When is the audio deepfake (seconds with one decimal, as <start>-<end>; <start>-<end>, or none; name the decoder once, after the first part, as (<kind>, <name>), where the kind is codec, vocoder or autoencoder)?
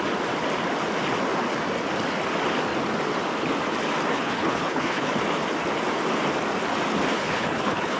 4.1-5.1 (codec, HILCodec); 7.1-8.0